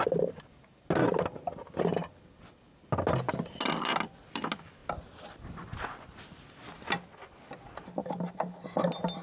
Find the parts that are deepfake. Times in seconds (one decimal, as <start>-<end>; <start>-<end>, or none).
none